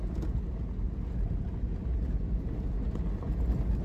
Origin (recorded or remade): recorded